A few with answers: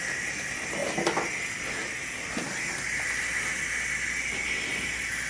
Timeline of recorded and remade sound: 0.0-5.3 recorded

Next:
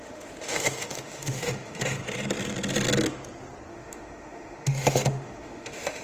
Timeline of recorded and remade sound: 0.0-2.0 remade; 2.0-3.7 recorded; 3.7-6.0 remade